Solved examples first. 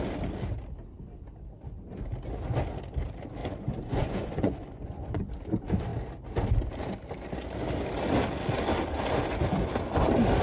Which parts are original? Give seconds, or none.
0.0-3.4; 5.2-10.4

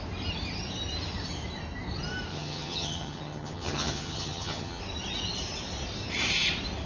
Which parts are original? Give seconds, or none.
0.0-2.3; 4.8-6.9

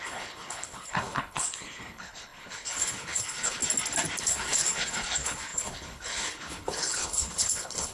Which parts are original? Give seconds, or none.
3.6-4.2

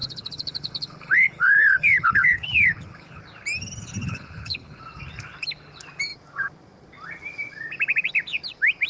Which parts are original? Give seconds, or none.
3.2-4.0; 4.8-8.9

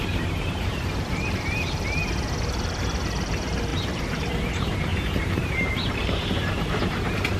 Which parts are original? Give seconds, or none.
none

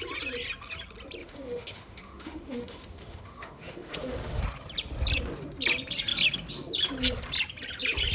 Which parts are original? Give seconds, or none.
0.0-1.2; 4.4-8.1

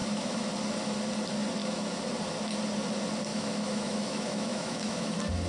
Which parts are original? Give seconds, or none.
0.5-1.6; 2.1-3.3; 5.1-5.5

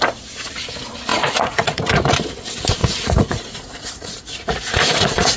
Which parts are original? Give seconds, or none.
0.0-1.1; 1.9-2.8